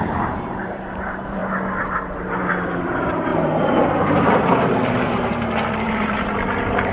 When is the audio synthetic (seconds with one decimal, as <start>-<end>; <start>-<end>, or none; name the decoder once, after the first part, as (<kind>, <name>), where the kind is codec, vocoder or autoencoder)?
0.0-1.4 (vocoder, BigVGAN v2); 2.2-6.9

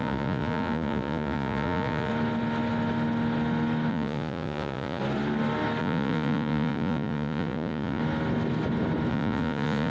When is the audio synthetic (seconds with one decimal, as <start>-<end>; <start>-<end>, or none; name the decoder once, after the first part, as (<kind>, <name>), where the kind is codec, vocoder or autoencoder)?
0.0-2.1 (vocoder, Vocos); 3.9-5.0; 5.8-8.0; 9.1-9.9

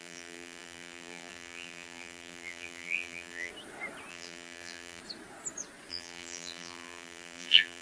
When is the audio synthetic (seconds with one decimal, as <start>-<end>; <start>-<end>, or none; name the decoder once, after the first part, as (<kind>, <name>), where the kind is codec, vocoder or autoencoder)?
0.0-3.5 (vocoder, BigVGAN v2); 4.1-5.0; 5.9-7.8

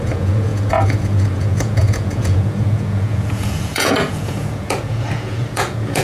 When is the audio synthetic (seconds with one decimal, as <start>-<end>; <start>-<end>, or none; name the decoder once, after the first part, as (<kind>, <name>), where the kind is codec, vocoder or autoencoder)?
0.0-6.0 (vocoder, Vocos)

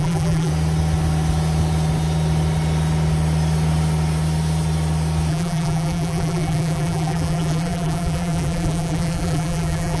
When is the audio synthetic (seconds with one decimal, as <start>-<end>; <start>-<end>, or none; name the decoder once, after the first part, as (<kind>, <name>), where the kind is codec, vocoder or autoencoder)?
0.0-0.5 (vocoder, BigVGAN v2); 5.3-10.0